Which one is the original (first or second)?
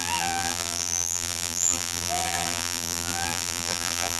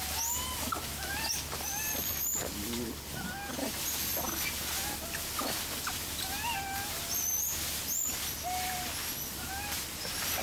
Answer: second